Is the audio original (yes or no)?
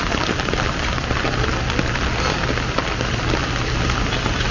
yes